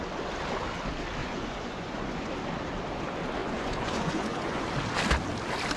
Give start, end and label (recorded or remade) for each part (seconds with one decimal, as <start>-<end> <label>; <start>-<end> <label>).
0.0-1.2 recorded; 1.2-2.3 remade; 2.3-3.4 recorded; 3.4-4.6 remade; 4.6-5.8 recorded